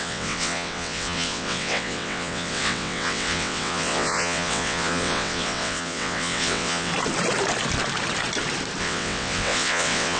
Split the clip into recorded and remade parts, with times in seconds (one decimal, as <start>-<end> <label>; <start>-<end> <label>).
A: 0.0-6.9 remade; 6.9-8.8 recorded; 8.8-10.2 remade